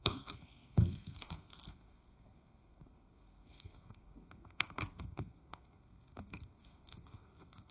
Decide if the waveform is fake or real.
fake